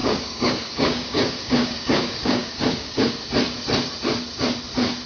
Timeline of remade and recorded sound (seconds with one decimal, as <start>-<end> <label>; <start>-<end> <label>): 0.0-3.1 remade; 3.1-5.1 recorded